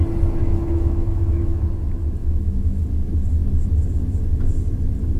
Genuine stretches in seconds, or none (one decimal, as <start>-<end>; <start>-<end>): 0.0-0.4; 1.6-2.2; 2.8-5.2